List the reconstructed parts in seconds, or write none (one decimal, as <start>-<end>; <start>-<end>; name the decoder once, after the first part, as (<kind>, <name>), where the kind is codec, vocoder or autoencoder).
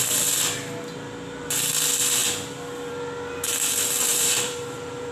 4.1-5.1 (vocoder, BigVGAN v2)